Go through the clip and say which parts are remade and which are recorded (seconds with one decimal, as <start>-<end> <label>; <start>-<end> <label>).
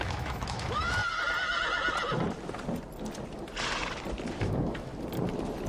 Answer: 0.0-1.0 remade; 1.0-4.4 recorded; 4.4-4.9 remade; 4.9-5.7 recorded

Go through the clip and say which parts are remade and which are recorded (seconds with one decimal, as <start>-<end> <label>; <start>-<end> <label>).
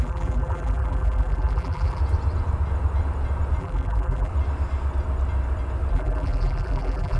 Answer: 0.0-2.0 remade; 2.0-3.6 recorded; 3.6-4.3 remade; 4.3-5.9 recorded; 5.9-7.2 remade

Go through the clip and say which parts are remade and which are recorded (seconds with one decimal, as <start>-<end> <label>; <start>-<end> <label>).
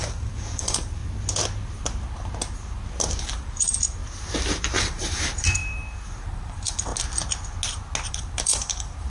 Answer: 0.0-1.0 remade; 1.0-3.2 recorded; 3.2-4.0 remade; 4.0-4.8 recorded; 4.8-5.6 remade; 5.6-6.1 recorded; 6.1-6.9 remade; 6.9-8.1 recorded; 8.1-9.1 remade